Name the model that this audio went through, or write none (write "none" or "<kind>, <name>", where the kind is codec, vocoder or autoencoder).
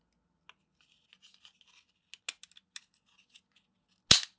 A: none